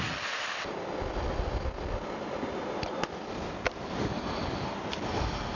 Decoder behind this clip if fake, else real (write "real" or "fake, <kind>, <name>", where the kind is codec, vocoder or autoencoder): real